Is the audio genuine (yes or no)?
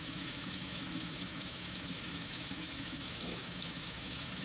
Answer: no